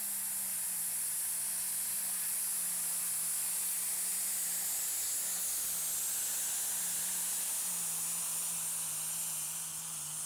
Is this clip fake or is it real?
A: real